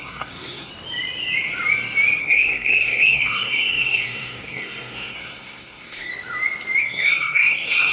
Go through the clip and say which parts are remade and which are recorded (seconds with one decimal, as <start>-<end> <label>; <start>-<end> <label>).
0.0-0.7 remade; 0.7-2.2 recorded; 2.2-6.1 remade; 6.1-6.8 recorded; 6.8-7.9 remade